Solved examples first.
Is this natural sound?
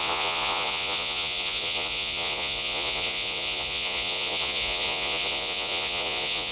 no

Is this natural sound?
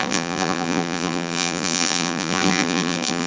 no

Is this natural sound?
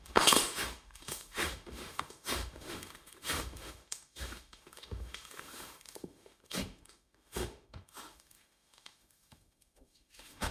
no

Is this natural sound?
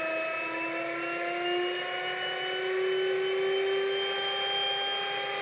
yes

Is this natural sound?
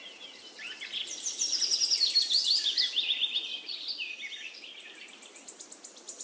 no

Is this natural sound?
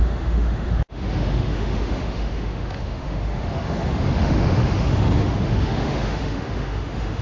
no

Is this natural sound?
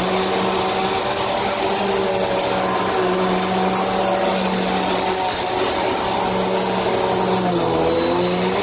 yes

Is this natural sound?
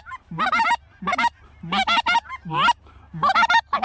yes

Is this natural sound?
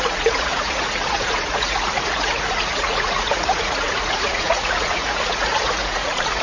no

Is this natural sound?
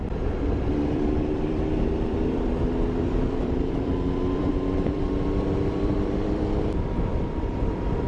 no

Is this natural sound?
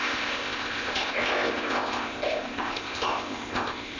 no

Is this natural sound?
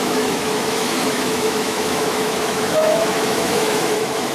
no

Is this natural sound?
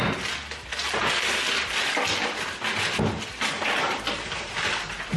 yes